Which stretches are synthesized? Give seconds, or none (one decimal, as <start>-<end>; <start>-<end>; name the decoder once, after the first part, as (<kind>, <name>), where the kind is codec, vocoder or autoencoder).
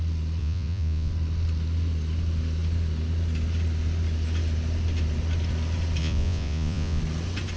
0.4-1.1 (vocoder, Vocos); 6.0-7.0